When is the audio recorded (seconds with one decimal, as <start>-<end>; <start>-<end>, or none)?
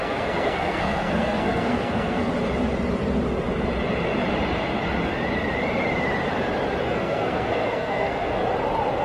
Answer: 2.3-6.8; 8.4-9.0